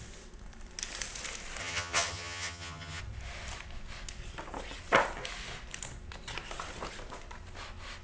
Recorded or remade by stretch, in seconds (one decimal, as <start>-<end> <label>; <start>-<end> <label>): 0.0-1.6 recorded; 1.6-3.0 remade; 3.0-8.0 recorded